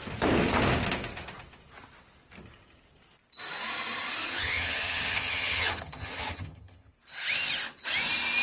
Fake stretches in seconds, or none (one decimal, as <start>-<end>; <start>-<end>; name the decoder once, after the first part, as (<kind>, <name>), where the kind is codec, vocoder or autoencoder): 4.3-6.9 (vocoder, HiFi-GAN)